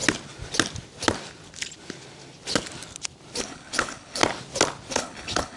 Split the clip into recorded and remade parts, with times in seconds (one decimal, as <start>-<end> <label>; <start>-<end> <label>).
0.0-3.4 recorded; 3.4-4.2 remade; 4.2-4.9 recorded; 4.9-5.6 remade